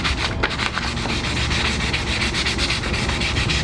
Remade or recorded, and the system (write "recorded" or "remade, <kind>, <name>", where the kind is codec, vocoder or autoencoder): recorded